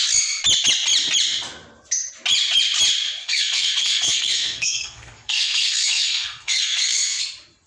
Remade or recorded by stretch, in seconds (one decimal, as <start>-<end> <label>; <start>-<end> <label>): 0.0-3.2 recorded; 3.2-7.2 remade; 7.2-7.7 recorded